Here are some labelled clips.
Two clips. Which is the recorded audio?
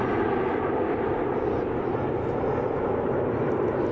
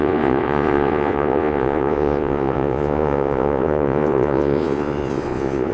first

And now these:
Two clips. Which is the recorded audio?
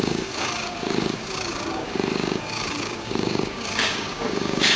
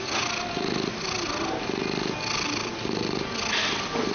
second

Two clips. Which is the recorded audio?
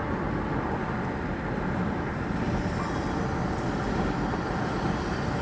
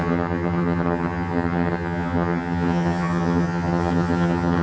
first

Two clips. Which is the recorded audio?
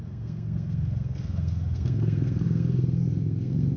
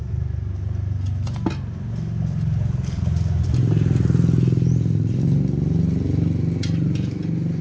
second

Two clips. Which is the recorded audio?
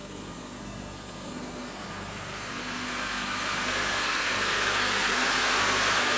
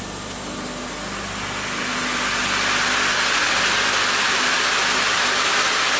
second